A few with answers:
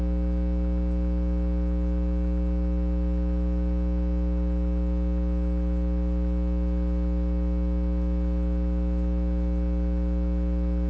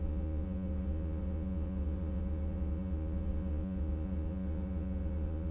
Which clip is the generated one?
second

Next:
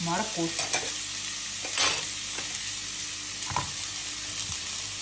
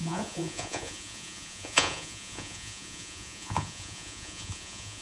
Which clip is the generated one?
second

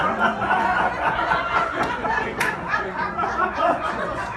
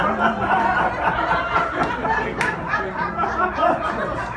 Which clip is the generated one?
first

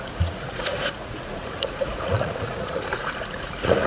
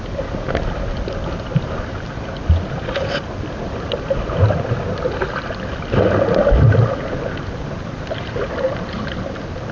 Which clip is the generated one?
first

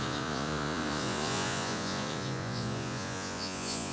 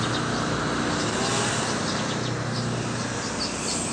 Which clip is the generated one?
first